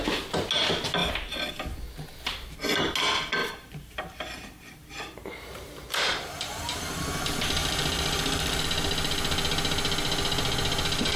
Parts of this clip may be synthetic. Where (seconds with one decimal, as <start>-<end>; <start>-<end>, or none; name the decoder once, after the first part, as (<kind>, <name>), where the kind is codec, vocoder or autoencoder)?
3.4-7.0 (vocoder, BigVGAN v2); 7.6-8.6